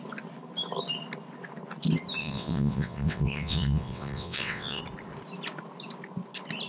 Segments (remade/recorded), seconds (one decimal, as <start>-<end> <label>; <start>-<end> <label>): 0.0-2.2 recorded; 2.2-4.8 remade; 4.8-6.7 recorded